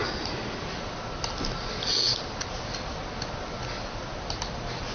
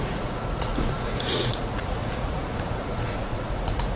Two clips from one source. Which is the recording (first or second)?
first